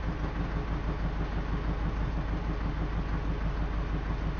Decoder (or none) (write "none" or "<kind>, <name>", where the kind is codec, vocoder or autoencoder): none